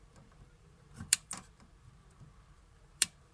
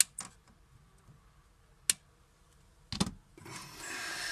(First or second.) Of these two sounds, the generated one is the first